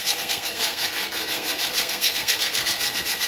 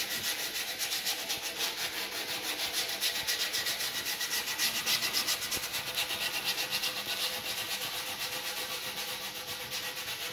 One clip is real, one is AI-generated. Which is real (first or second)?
second